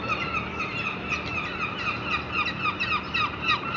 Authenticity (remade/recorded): recorded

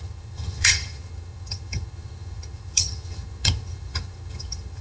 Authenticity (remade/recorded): remade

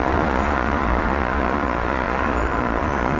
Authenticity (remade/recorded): remade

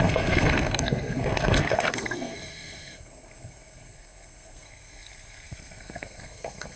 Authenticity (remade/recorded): remade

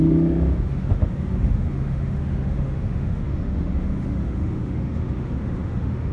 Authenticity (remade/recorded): remade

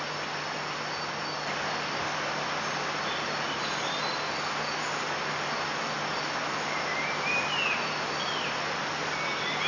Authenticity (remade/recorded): recorded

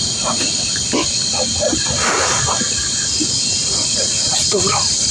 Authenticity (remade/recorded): recorded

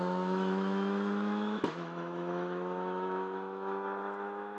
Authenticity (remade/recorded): remade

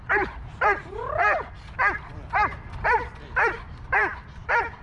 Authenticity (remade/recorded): remade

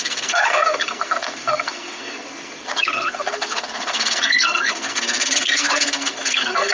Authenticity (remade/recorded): remade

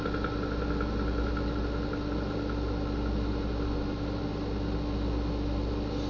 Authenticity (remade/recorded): recorded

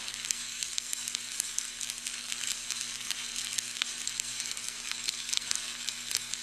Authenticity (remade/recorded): remade